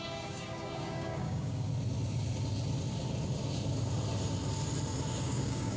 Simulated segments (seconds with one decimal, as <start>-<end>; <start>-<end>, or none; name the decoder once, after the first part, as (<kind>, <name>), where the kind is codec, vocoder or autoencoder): 0.0-1.7 (codec, DAC); 5.2-5.8